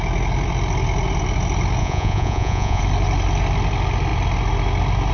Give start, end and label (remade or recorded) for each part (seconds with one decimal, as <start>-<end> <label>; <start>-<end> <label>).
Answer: 0.0-1.8 recorded; 1.8-2.8 remade; 2.8-5.1 recorded